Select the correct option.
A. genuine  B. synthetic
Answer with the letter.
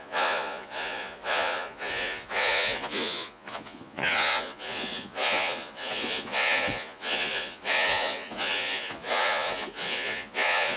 B